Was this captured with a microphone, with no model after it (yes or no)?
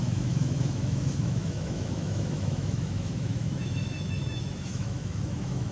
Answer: no